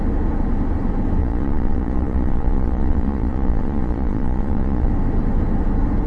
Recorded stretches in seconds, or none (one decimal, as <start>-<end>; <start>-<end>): 0.0-1.2; 4.9-6.1